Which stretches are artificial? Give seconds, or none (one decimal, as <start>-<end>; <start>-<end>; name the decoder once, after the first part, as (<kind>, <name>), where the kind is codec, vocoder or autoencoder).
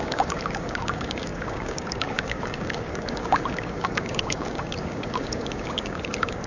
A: 0.0-6.5 (codec, DAC)